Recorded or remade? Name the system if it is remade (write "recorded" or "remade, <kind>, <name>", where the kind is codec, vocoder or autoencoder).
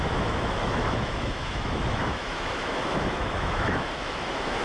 remade, autoencoder, DAC-VAE